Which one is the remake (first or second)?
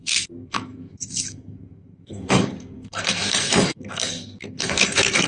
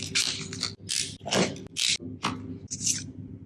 first